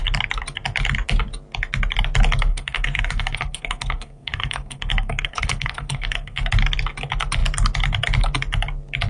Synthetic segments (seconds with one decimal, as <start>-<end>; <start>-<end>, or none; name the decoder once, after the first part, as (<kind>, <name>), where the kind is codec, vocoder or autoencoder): 2.5-6.5 (codec, SNAC)

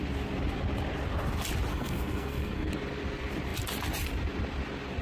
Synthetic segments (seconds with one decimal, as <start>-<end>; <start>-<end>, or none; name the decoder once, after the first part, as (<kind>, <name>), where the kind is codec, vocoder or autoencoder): 1.7-2.7 (codec, SNAC)

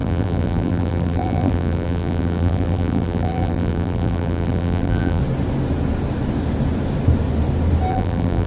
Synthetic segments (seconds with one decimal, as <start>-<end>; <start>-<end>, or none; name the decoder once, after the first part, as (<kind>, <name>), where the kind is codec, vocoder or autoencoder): 0.0-5.2 (vocoder, BigVGAN v2); 7.9-8.5

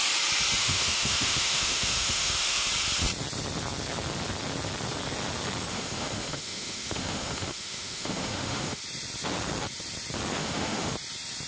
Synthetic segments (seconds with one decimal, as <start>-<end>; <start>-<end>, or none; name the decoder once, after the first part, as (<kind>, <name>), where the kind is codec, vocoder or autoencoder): 0.6-2.7 (autoencoder, DAC-VAE); 5.7-8.8; 10.4-10.9

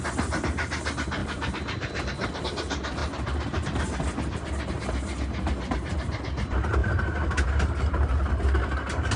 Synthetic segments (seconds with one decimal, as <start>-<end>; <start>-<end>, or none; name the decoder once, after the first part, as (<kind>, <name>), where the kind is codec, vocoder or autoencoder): 1.2-2.4 (vocoder, BigVGAN v2); 3.0-4.7; 6.8-8.3

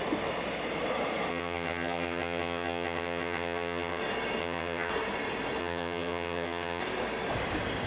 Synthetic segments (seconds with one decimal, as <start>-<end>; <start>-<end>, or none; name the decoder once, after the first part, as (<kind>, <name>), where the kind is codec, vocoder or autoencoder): 1.3-4.0 (vocoder, HiFi-GAN); 4.4-4.9; 5.6-6.8